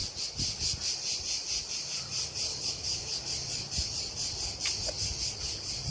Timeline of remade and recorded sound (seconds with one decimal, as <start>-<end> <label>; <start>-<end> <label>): 0.0-2.5 recorded; 2.5-3.2 remade; 3.2-5.9 recorded